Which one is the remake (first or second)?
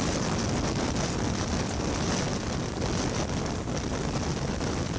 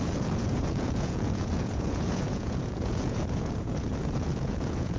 second